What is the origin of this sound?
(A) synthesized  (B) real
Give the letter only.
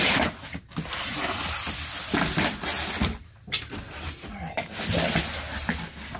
B